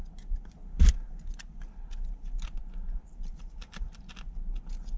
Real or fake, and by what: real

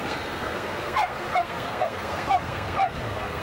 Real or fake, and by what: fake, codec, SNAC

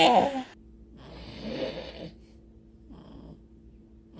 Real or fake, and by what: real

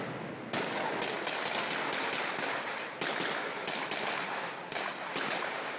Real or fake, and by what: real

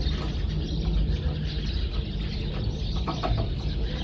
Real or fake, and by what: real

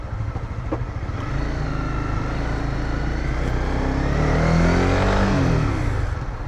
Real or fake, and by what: real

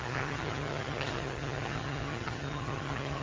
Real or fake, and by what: fake, vocoder, HiFi-GAN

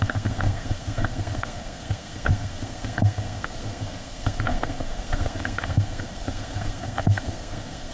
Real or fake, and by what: fake, codec, SNAC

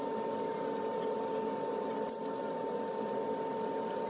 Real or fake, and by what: real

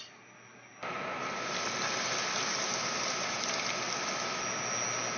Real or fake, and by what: real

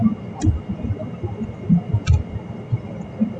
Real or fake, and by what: fake, vocoder, BigVGAN v2